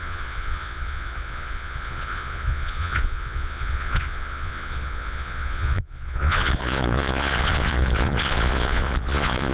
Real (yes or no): no